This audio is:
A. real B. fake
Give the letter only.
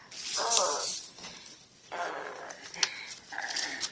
A